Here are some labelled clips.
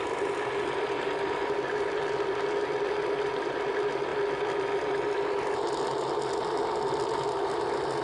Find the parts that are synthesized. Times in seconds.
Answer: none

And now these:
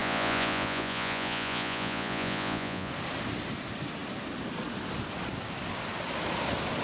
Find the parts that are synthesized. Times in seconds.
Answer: 0.0-2.9 (vocoder, Vocos)

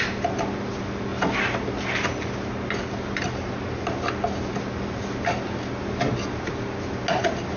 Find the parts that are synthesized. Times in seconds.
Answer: none

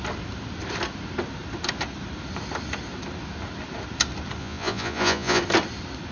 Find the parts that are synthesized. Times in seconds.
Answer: 4.4-5.4 (vocoder, Vocos)

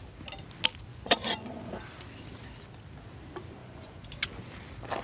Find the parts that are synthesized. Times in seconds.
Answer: 0.9-1.7 (vocoder, Vocos); 3.6-4.1

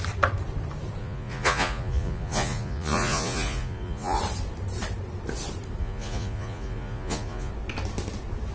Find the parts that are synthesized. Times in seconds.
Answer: 1.0-4.2 (vocoder, Vocos); 5.8-7.5